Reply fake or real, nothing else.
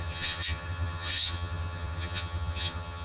fake